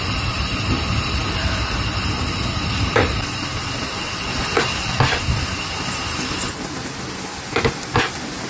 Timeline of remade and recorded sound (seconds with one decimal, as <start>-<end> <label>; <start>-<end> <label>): 0.0-8.5 recorded